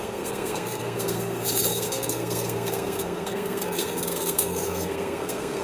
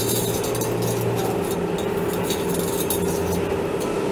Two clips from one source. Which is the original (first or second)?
second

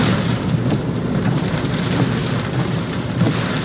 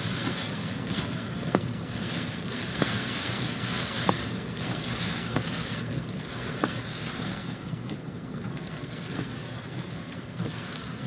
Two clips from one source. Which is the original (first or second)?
first